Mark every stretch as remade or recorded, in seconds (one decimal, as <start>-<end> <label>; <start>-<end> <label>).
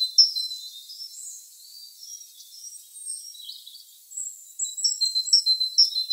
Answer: 0.0-6.1 recorded